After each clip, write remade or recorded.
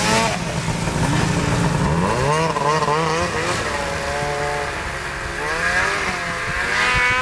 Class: recorded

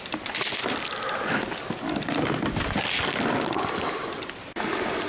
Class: recorded